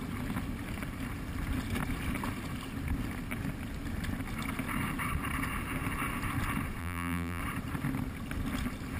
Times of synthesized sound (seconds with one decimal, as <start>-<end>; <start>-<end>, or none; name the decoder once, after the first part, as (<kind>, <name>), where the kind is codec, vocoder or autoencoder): 6.8-7.4 (vocoder, BigVGAN v2)